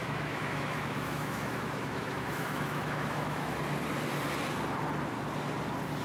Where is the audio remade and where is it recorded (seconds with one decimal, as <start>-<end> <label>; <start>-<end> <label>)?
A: 0.0-3.6 remade; 3.6-6.0 recorded